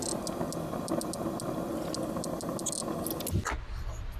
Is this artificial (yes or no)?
no